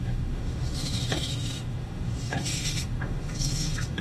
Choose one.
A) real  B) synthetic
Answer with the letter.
B